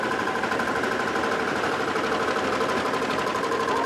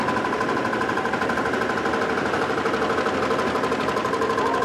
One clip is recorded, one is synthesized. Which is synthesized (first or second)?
first